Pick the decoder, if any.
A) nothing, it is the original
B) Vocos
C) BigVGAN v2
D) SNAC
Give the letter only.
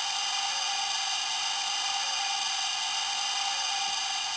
A